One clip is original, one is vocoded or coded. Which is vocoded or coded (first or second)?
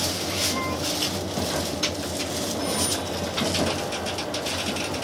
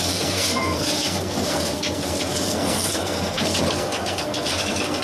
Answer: second